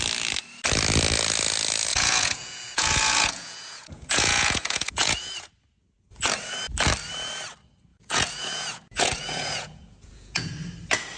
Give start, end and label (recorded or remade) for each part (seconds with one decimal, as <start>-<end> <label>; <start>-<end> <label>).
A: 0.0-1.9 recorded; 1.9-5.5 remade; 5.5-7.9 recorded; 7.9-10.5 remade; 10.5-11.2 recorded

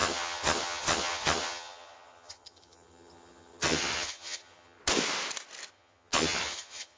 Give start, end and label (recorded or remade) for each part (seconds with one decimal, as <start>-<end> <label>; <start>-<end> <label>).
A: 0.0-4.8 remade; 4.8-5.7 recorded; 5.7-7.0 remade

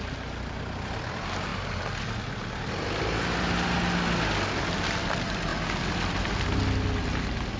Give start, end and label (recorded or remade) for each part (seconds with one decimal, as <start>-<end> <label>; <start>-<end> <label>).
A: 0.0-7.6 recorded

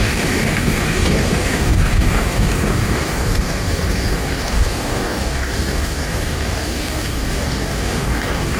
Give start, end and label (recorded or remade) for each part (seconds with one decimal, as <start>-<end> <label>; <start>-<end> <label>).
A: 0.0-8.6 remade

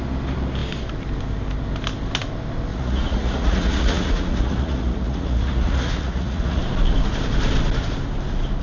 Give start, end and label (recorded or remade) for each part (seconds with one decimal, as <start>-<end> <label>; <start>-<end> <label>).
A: 0.0-2.7 recorded; 2.7-6.6 remade; 6.6-8.6 recorded

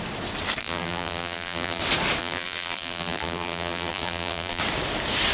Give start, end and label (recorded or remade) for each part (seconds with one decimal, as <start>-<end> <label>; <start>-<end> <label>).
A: 0.0-0.6 recorded; 0.6-1.8 remade; 1.8-2.2 recorded; 2.2-4.6 remade; 4.6-5.3 recorded